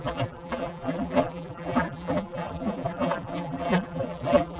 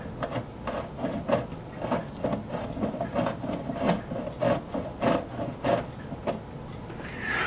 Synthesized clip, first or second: first